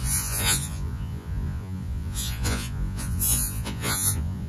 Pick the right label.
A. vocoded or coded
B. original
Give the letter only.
A